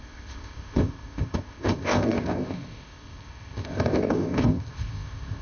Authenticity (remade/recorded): remade